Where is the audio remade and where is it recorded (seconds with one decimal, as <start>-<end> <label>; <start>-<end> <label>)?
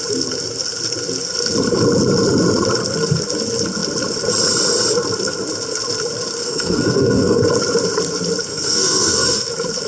0.0-6.4 recorded; 6.4-7.4 remade; 7.4-8.5 recorded; 8.5-9.5 remade; 9.5-9.9 recorded